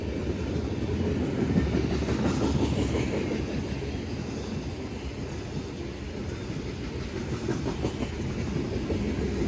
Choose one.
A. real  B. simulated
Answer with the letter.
A